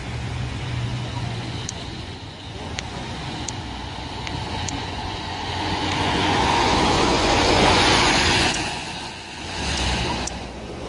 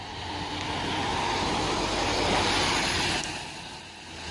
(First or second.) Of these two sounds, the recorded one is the second